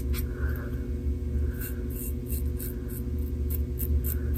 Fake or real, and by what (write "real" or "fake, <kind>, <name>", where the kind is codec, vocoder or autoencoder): real